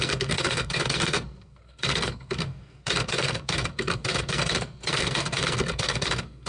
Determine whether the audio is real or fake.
fake